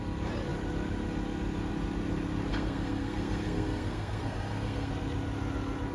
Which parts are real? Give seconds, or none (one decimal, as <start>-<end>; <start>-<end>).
0.0-2.5; 4.9-5.9